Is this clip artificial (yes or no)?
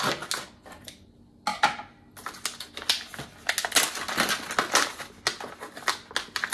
no